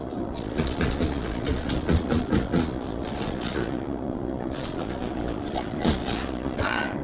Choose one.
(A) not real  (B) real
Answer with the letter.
A